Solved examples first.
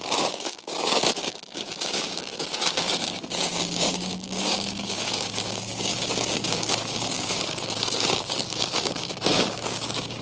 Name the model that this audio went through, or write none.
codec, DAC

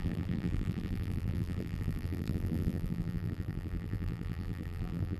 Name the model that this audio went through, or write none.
vocoder, BigVGAN v2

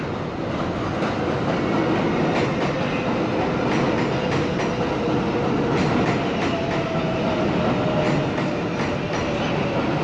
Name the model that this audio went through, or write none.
none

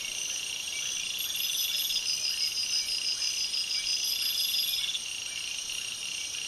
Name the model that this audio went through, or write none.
none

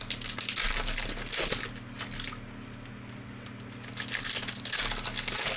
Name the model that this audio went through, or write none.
none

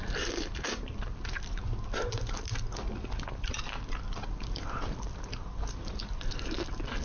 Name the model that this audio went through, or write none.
none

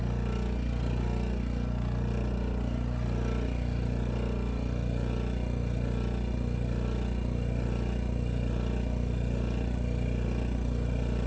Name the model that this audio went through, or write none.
none